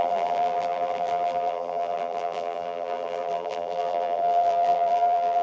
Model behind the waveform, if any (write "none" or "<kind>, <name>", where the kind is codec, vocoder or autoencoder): vocoder, BigVGAN v2